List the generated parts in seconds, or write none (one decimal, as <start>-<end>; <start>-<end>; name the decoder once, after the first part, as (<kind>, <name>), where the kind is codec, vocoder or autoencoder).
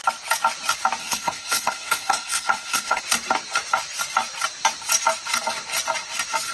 1.0-3.0 (codec, SNAC)